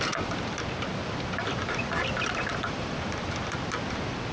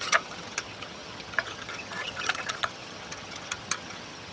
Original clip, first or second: first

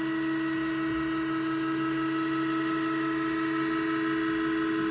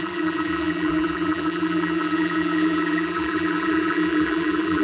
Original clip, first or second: first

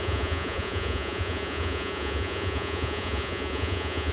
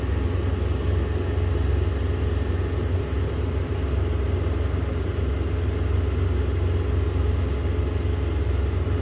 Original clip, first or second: second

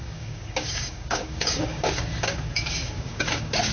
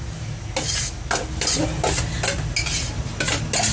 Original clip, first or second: second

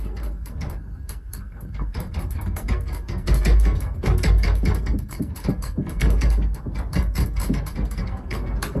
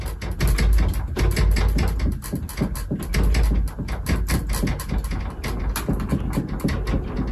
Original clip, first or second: second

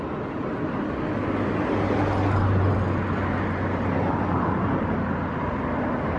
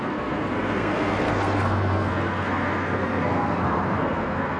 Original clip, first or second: first